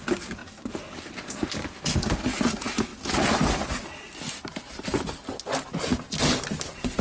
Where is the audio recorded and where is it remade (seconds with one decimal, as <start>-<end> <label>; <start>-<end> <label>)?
0.0-7.0 recorded